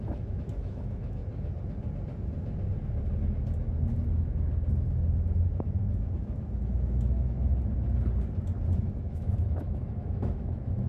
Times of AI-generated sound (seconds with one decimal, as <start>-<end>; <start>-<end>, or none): 0.0-1.2; 5.8-7.5; 9.0-10.9